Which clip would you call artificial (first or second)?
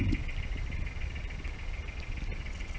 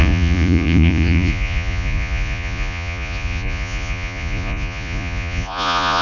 second